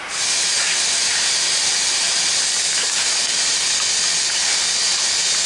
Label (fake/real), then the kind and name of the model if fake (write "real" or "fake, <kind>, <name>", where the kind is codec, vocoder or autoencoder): real